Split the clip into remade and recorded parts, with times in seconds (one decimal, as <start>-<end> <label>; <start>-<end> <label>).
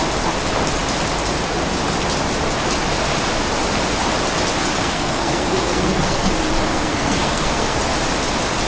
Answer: 0.0-4.8 recorded; 4.8-6.3 remade; 6.3-6.7 recorded; 6.7-7.8 remade; 7.8-8.7 recorded